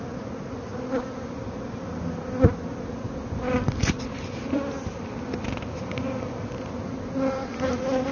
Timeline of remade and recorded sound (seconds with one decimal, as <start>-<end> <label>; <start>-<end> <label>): 0.0-8.1 recorded